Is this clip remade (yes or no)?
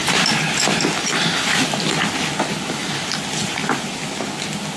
no